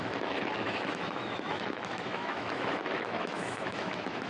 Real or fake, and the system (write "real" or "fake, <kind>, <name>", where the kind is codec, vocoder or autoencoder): fake, autoencoder, DAC-VAE